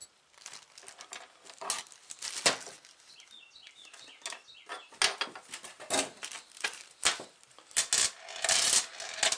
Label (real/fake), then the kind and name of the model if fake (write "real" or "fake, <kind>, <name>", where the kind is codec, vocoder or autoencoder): real